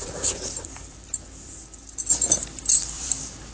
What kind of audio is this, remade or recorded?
remade